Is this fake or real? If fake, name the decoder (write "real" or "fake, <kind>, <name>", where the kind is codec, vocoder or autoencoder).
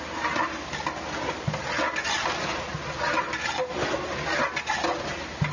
real